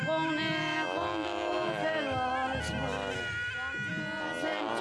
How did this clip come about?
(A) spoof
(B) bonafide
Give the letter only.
B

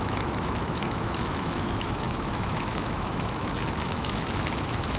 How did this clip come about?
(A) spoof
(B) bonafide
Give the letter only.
A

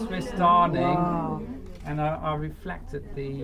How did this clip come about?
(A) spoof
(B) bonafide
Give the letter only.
B